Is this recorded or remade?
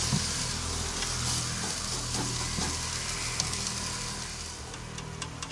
recorded